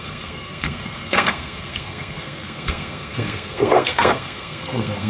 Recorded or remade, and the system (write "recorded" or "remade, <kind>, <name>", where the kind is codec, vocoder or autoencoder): remade, codec, SNAC